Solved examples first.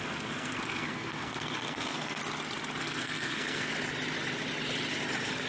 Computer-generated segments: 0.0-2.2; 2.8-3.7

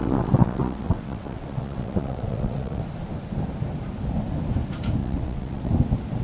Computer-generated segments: 0.0-2.8; 5.0-5.7

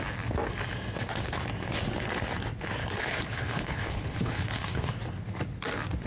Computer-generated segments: 2.8-4.9